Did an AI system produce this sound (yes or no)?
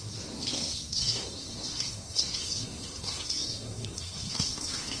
yes